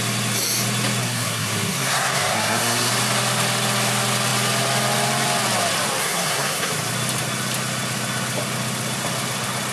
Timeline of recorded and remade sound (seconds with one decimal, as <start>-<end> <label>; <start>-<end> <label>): 0.0-1.0 recorded; 1.0-2.9 remade; 2.9-6.0 recorded; 6.0-6.7 remade; 6.7-9.7 recorded